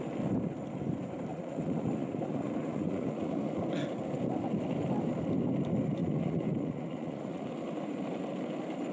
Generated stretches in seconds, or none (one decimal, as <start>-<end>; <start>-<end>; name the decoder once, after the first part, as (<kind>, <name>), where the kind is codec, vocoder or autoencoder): 1.3-3.6 (vocoder, Vocos); 6.0-7.5